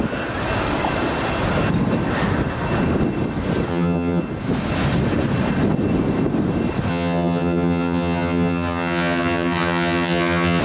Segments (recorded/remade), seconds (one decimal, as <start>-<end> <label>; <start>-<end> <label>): 0.0-3.7 recorded; 3.7-4.2 remade; 4.2-6.9 recorded; 6.9-10.6 remade